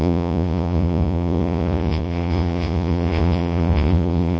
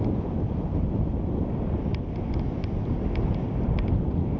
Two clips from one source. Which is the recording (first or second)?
second